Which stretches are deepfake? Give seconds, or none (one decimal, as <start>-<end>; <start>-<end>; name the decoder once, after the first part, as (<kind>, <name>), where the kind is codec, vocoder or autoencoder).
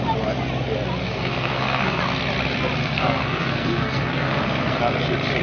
1.0-2.0 (codec, SNAC); 2.8-4.8